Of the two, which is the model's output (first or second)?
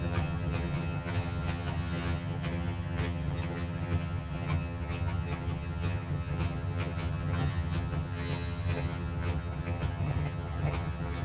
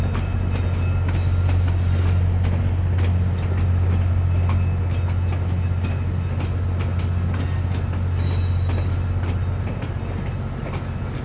first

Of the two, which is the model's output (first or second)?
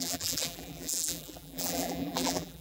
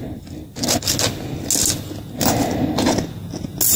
first